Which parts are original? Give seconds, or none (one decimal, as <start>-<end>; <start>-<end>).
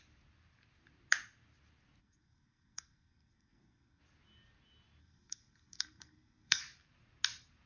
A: 0.0-2.0; 4.0-5.0; 6.6-7.7